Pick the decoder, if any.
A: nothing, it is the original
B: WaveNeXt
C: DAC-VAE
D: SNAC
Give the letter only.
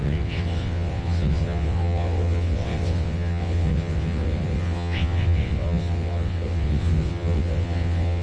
B